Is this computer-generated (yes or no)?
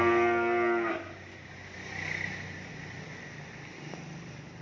no